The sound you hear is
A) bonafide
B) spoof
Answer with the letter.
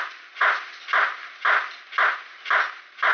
A